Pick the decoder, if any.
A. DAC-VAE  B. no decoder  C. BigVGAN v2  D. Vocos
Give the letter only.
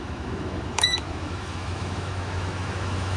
A